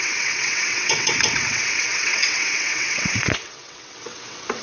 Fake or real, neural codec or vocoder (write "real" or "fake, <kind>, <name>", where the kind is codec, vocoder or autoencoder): fake, vocoder, WaveNeXt